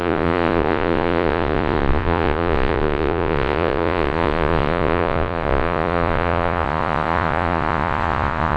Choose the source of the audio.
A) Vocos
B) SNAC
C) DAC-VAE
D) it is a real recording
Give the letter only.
A